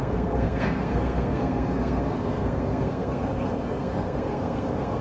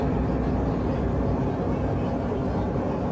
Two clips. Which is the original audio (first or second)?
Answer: second